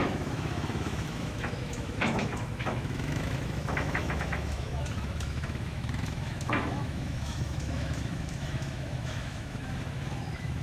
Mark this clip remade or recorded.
remade